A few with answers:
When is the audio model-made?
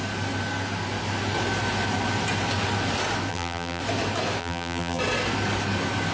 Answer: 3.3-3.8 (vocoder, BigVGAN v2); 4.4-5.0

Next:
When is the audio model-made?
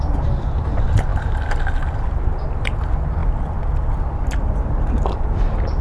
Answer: 1.1-1.7 (vocoder, BigVGAN v2)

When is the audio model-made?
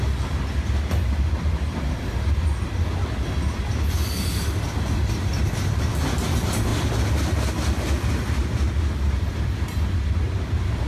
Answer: none